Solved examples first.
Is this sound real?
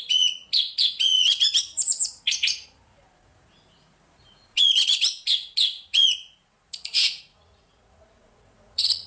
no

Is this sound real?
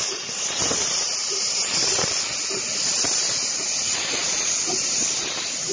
yes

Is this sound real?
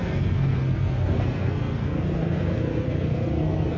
no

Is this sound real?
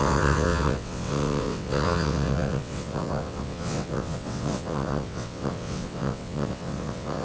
no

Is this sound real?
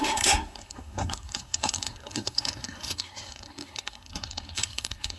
no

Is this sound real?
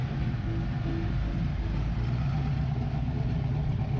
yes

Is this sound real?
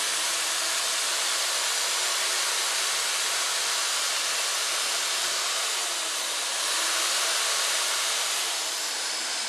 no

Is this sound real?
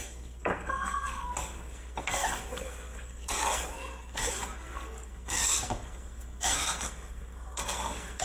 no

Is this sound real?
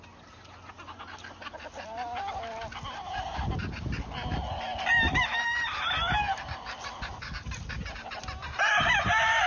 yes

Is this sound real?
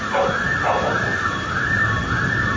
yes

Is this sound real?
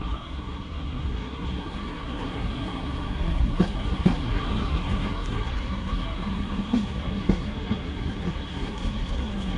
no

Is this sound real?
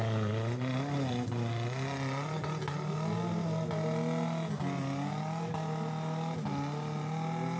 yes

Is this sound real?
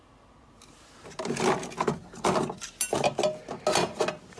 yes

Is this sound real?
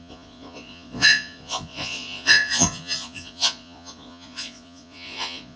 no